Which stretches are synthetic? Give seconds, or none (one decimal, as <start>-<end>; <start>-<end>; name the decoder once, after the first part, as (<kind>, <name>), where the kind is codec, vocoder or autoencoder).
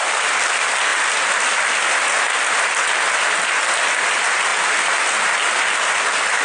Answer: none